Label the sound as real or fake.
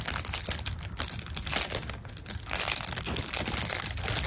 real